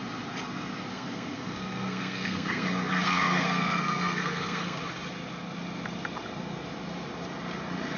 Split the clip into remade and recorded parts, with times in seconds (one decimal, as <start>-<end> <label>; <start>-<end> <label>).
0.0-0.9 recorded; 0.9-4.8 remade; 4.8-8.0 recorded